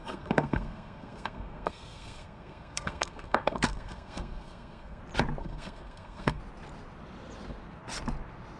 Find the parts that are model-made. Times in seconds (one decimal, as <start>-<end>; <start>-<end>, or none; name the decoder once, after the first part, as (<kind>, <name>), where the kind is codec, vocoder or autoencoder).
0.0-5.0 (codec, SNAC); 5.4-6.4